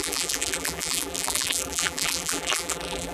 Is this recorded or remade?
remade